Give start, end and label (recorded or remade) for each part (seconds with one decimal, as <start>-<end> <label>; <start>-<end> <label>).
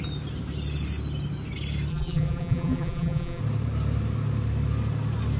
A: 0.0-1.9 recorded; 1.9-3.4 remade; 3.4-5.4 recorded